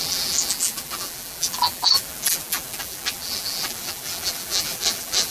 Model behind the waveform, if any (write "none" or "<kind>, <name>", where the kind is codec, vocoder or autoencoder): vocoder, BigVGAN v2